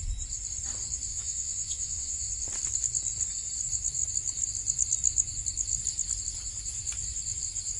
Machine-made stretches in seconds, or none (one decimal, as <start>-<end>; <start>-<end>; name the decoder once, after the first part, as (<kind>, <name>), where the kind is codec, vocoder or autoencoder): 1.1-2.3 (vocoder, Vocos)